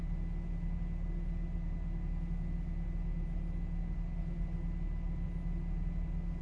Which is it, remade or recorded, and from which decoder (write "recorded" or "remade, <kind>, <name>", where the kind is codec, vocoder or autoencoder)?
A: recorded